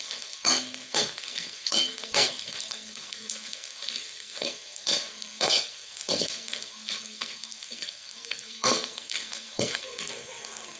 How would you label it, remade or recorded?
remade